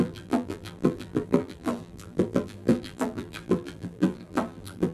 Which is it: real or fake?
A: fake